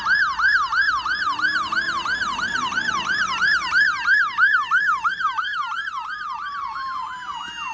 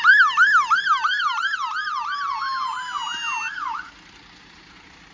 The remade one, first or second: first